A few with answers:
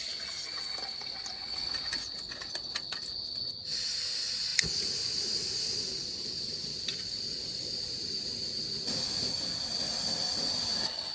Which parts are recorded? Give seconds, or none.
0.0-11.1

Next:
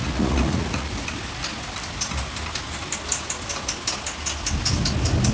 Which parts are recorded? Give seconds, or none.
0.9-5.3